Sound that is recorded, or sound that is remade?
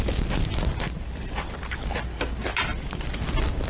recorded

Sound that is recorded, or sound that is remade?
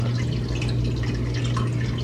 recorded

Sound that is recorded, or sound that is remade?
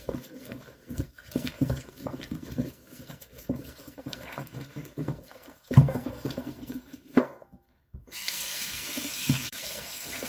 remade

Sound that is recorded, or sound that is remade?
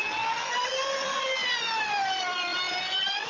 recorded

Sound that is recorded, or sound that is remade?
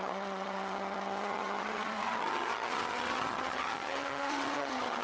remade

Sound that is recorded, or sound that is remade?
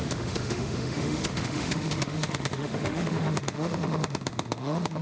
remade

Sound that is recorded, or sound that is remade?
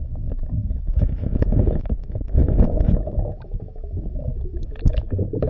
remade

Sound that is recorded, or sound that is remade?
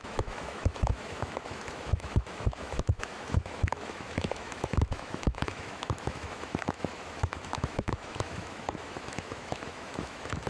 remade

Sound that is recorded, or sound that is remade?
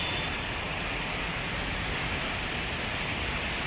recorded